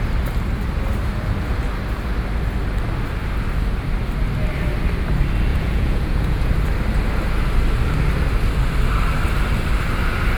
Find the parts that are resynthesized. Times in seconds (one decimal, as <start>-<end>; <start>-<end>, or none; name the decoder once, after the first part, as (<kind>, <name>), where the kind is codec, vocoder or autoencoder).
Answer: 5.5-6.5 (vocoder, Vocos)